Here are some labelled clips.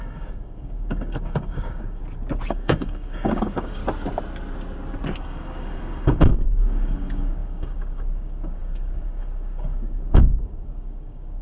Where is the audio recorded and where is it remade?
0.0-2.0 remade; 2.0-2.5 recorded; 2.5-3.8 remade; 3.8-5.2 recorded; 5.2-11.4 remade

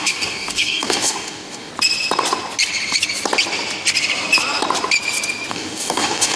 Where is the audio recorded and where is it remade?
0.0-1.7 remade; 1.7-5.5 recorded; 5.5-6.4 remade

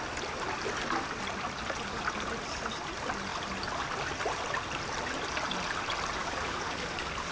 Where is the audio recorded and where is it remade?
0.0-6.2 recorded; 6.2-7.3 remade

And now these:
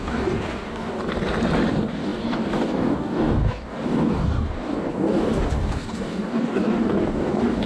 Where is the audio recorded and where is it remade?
0.0-1.0 remade; 1.0-1.7 recorded; 1.7-7.7 remade

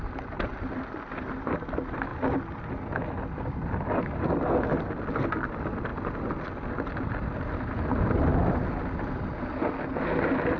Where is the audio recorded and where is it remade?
0.0-10.6 recorded

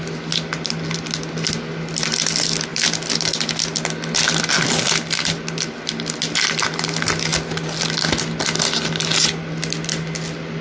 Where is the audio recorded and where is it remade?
0.0-10.6 recorded

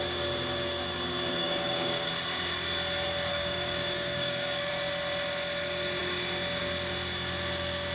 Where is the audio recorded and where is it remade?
0.0-1.4 recorded; 1.4-2.1 remade; 2.1-3.3 recorded; 3.3-4.7 remade; 4.7-7.9 recorded

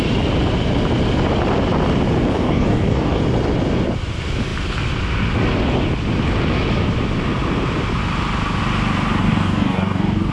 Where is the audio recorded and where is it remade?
0.0-2.3 recorded; 2.3-3.2 remade; 3.2-9.2 recorded; 9.2-10.3 remade